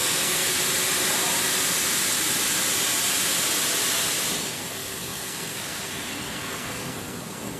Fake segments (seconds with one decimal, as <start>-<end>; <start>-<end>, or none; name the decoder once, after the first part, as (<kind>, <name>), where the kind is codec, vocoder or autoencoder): 0.0-0.6 (codec, SNAC); 4.4-7.6

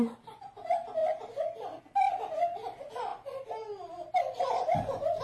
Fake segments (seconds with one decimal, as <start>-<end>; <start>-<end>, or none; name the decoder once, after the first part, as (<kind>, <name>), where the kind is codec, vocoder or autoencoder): none

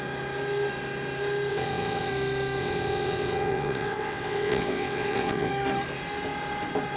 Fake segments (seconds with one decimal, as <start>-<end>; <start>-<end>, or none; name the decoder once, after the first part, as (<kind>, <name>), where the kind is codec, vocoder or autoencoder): 1.5-2.1 (vocoder, WaveNeXt); 2.6-5.5

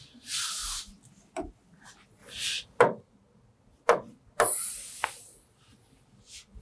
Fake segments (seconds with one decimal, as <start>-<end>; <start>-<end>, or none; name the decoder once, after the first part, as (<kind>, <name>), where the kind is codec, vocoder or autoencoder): none

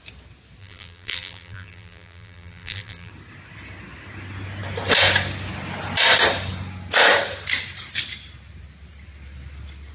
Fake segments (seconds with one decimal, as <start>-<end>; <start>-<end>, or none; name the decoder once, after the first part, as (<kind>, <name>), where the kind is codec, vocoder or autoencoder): 0.6-3.1 (vocoder, BigVGAN v2)

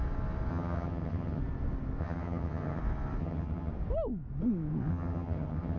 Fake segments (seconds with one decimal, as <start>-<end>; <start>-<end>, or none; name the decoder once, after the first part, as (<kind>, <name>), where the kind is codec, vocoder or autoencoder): 0.5-1.4 (vocoder, HiFi-GAN); 2.0-2.8; 3.2-3.7; 4.9-5.8

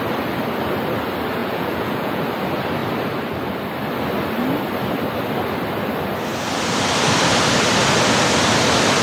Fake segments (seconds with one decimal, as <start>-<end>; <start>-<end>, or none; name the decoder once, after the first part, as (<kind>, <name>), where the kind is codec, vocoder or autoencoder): 1.4-2.2 (vocoder, Vocos)